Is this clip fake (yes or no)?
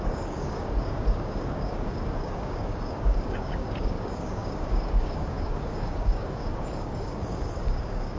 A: yes